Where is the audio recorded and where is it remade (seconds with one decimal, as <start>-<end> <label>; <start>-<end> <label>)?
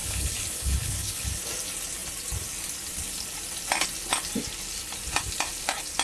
0.0-1.4 remade; 1.4-6.0 recorded